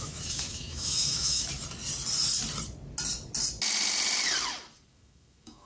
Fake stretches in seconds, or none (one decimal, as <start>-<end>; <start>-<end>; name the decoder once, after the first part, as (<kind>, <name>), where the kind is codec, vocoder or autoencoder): 0.0-1.5 (autoencoder, DAC-VAE); 4.9-5.7